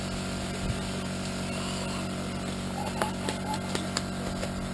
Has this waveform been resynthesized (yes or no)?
no